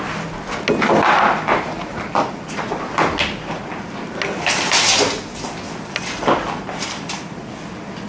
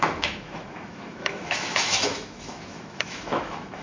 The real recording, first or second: first